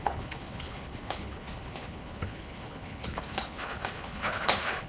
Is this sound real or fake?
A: fake